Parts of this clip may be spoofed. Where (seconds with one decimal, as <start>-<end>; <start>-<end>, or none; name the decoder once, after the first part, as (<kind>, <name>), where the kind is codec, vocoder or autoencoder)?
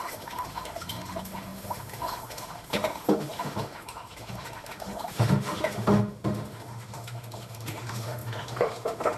0.0-9.2 (autoencoder, DAC-VAE)